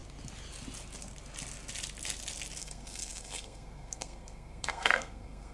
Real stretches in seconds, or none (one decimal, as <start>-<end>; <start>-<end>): 0.0-2.6